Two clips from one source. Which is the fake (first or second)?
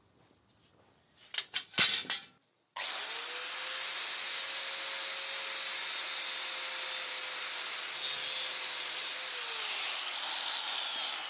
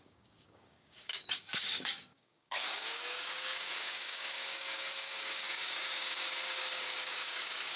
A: second